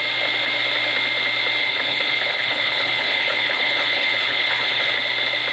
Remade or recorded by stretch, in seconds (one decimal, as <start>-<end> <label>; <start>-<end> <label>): 0.0-1.6 recorded; 1.6-4.9 remade; 4.9-5.5 recorded